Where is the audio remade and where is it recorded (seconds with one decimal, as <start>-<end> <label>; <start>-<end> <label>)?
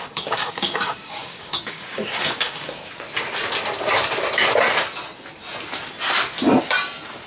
0.0-2.8 remade; 2.8-7.3 recorded